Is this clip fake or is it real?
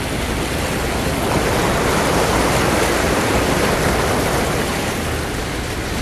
real